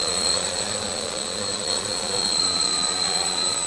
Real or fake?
fake